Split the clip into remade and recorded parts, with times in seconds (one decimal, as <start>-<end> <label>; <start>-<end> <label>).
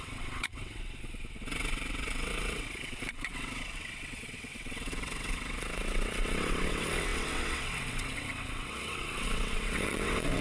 0.0-10.4 remade